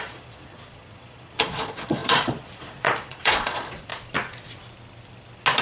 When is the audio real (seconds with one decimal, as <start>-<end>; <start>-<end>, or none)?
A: 3.9-5.6